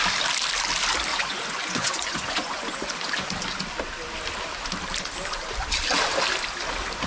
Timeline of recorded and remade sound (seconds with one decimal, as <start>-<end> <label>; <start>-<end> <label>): 0.0-1.1 recorded; 1.1-2.9 remade; 2.9-7.1 recorded